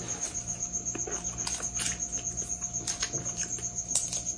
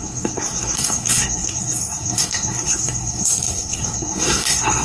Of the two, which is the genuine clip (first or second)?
first